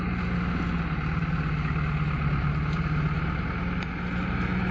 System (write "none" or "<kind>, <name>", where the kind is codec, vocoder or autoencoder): none